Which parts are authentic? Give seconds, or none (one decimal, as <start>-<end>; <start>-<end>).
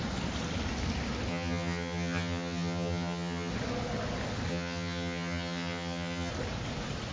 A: 0.0-1.3; 3.5-4.5; 6.3-7.1